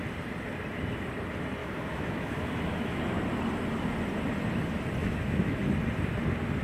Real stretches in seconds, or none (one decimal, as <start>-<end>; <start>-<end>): 0.0-1.6; 3.0-5.0; 5.6-6.6

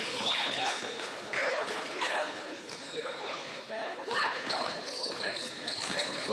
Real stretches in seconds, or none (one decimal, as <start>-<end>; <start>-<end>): none

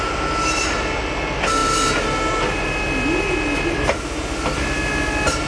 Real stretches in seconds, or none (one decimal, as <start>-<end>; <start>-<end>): 0.0-5.5

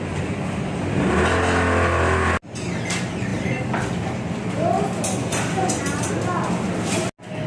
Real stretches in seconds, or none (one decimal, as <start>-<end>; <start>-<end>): 0.0-3.3; 6.1-7.5

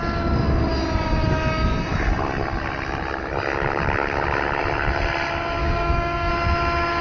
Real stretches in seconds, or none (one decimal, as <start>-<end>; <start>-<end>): 0.0-5.6; 6.3-7.0

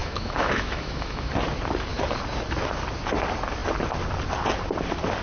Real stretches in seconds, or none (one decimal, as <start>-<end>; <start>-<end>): 1.3-5.2

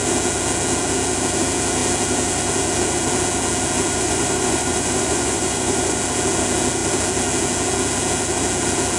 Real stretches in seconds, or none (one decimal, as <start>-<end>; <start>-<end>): 0.0-3.9; 6.0-9.0